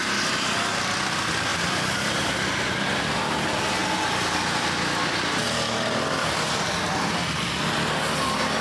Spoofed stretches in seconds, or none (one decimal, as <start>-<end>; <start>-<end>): 1.5-3.0